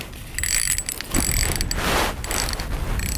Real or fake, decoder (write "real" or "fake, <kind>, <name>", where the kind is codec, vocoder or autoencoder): real